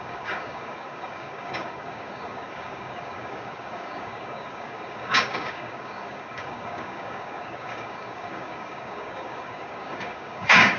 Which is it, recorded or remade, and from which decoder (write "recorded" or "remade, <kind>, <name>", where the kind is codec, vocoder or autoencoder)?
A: remade, codec, DAC